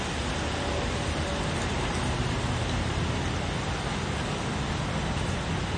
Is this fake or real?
real